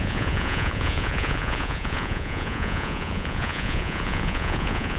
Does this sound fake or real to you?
fake